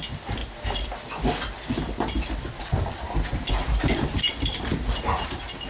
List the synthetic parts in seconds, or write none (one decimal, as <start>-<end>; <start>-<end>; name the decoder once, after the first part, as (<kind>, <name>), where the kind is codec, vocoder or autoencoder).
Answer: 4.7-5.3 (vocoder, BigVGAN v2)